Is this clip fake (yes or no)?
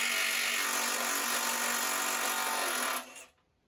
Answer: no